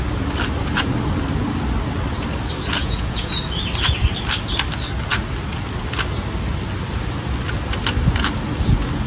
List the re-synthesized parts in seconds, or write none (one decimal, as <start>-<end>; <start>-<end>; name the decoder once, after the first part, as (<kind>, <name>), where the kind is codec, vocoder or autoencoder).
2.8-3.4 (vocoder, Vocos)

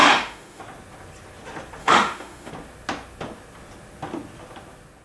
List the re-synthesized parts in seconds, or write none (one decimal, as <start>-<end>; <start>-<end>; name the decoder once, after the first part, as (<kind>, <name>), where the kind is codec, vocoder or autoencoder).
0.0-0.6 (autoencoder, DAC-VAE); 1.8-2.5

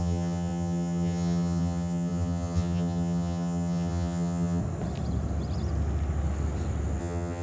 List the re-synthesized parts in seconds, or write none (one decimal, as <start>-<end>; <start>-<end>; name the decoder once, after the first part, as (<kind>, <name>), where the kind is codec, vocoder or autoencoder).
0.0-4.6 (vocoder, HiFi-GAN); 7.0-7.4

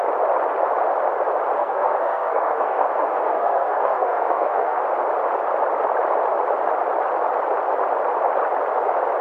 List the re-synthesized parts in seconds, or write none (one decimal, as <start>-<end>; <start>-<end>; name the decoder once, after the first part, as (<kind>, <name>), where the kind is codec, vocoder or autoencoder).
1.6-4.8 (codec, SNAC)

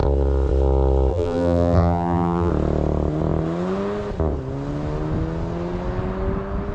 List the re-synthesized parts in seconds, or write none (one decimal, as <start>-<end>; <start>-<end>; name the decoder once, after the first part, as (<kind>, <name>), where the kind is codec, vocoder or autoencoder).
1.1-2.5 (vocoder, BigVGAN v2)

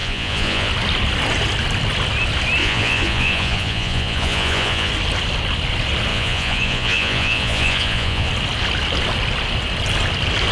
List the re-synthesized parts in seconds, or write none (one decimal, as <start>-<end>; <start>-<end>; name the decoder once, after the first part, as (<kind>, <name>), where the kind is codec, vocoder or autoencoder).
0.0-0.7 (vocoder, Vocos); 2.6-4.9; 6.1-8.3